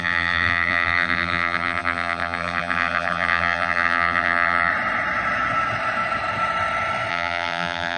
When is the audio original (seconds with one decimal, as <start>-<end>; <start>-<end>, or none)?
4.7-7.1